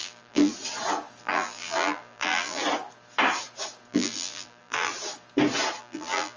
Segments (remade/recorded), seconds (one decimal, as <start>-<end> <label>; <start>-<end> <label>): 0.0-0.5 remade; 0.5-1.2 recorded; 1.2-2.6 remade; 2.6-3.9 recorded; 3.9-4.9 remade; 4.9-5.8 recorded; 5.8-6.4 remade